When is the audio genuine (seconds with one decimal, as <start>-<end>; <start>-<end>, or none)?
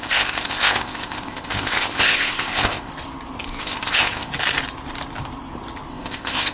2.9-3.6; 4.3-5.9